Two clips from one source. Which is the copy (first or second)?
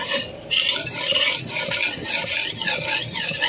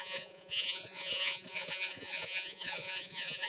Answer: second